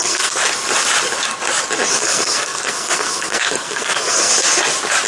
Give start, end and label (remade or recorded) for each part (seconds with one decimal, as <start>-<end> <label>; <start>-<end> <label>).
0.0-0.4 remade; 0.4-1.9 recorded; 1.9-4.3 remade; 4.3-5.1 recorded